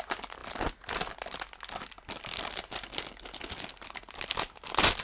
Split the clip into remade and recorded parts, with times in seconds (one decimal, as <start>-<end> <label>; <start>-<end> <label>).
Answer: 0.0-5.0 recorded